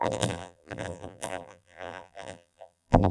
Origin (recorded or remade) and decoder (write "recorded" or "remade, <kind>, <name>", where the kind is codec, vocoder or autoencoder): remade, vocoder, BigVGAN v2